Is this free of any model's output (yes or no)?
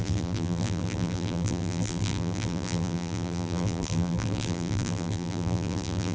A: no